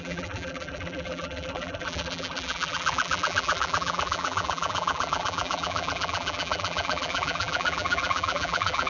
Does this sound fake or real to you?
fake